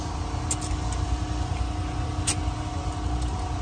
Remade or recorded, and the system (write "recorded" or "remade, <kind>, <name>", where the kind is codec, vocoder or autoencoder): recorded